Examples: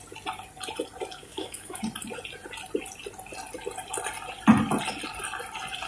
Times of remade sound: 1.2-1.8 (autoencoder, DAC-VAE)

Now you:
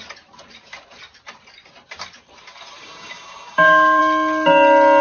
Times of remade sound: 2.8-4.0 (codec, DAC)